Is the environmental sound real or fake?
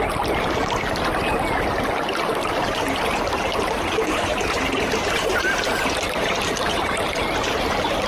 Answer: real